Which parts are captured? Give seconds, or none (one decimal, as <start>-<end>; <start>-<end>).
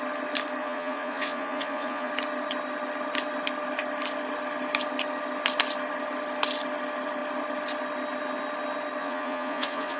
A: 0.0-0.6; 2.1-9.0